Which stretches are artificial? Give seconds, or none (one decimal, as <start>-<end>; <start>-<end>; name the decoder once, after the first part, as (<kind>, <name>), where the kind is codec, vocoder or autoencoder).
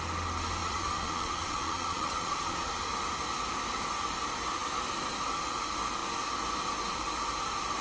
0.6-2.7 (vocoder, Vocos)